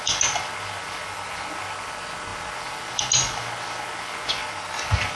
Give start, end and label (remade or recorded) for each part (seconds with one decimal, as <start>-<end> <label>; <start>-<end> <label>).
0.0-5.1 recorded